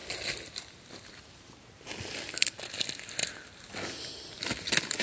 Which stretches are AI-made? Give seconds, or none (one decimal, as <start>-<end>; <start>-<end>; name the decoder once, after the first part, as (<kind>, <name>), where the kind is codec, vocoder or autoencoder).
none